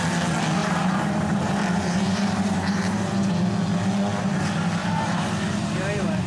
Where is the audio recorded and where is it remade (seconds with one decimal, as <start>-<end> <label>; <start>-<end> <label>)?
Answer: 0.0-0.6 recorded; 0.6-3.3 remade; 3.3-4.8 recorded; 4.8-6.3 remade